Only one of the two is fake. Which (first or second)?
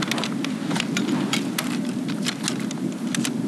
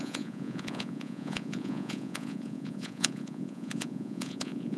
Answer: second